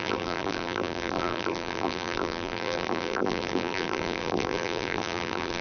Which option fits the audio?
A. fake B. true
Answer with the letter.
A